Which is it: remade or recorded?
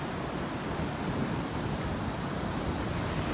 recorded